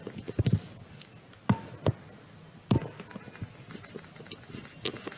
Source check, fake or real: real